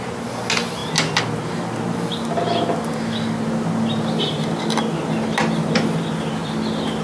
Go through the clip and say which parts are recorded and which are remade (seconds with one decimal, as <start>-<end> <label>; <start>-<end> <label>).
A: 0.0-7.0 recorded